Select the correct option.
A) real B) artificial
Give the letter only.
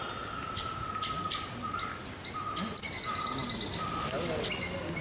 A